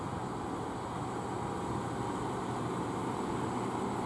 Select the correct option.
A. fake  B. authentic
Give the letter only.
B